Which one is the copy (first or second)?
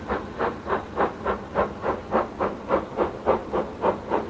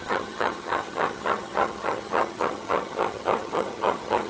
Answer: second